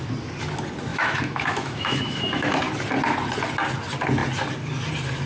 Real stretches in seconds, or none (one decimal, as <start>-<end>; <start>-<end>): 0.0-0.9; 2.6-5.3